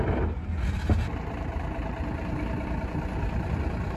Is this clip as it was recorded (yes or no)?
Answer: yes